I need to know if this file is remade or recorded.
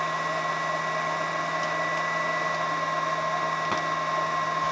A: recorded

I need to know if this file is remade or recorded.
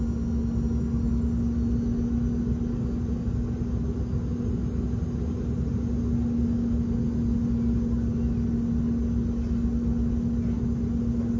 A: recorded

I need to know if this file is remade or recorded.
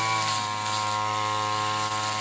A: recorded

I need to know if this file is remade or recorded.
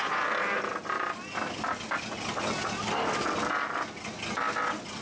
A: recorded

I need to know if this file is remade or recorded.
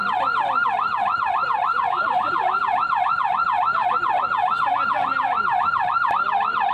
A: recorded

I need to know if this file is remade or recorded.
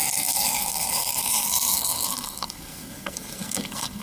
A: remade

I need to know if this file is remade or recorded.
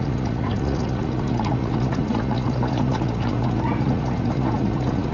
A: remade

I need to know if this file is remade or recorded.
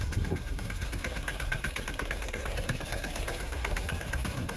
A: remade